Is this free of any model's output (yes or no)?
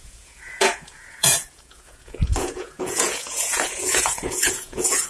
no